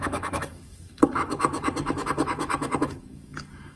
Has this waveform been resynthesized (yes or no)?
yes